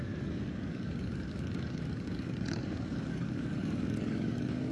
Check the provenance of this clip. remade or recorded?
remade